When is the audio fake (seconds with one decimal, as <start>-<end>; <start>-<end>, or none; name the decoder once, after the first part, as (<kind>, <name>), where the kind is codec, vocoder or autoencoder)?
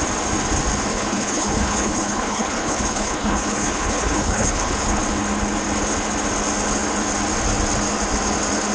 0.9-5.0 (codec, HILCodec)